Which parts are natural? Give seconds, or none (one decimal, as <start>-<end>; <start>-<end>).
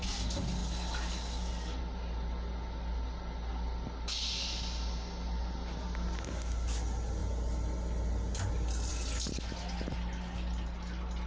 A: 0.0-11.3